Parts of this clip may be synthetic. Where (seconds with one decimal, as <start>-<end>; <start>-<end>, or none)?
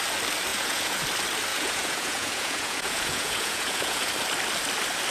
0.5-1.0; 1.5-4.1